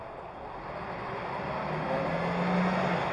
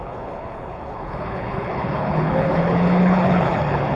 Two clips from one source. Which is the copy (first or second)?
second